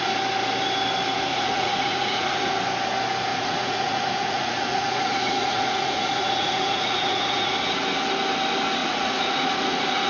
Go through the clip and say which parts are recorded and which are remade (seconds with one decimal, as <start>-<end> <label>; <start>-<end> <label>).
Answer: 0.0-1.3 recorded; 1.3-2.5 remade; 2.5-3.3 recorded; 3.3-7.5 remade; 7.5-8.8 recorded; 8.8-10.1 remade